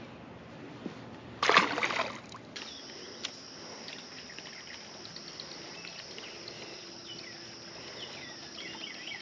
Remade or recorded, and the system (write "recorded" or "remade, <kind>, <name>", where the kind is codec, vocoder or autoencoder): recorded